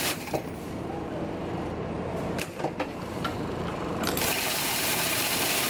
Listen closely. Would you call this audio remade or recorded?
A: remade